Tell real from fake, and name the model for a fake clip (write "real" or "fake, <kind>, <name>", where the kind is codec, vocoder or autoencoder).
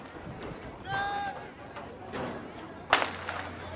real